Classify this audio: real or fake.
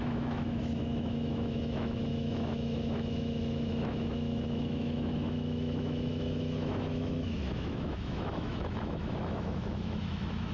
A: fake